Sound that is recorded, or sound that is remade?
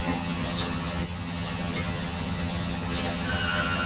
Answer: remade